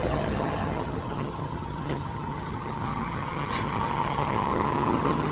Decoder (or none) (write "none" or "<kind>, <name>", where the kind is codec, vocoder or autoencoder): vocoder, HiFi-GAN